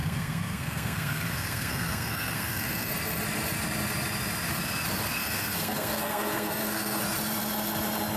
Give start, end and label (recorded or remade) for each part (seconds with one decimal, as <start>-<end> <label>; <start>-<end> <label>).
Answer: 0.0-2.9 remade; 2.9-5.2 recorded; 5.2-7.0 remade; 7.0-8.2 recorded